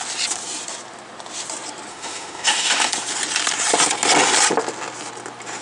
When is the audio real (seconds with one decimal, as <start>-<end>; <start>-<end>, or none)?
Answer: 0.0-1.9; 2.9-5.6